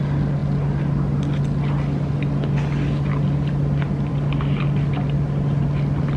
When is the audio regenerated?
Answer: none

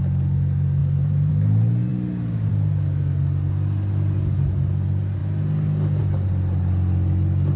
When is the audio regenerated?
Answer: 0.8-1.3

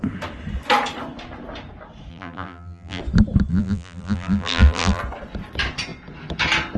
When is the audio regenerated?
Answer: 2.1-3.0; 3.5-5.0

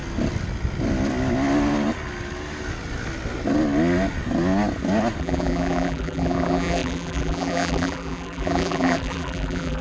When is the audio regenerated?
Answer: 5.2-9.8

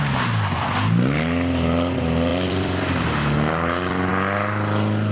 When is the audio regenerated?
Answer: 2.3-4.1